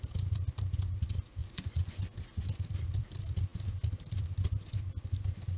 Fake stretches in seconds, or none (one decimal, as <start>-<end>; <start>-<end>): 1.4-2.0